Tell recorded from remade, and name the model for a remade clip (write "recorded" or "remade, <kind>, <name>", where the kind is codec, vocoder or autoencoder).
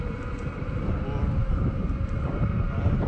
recorded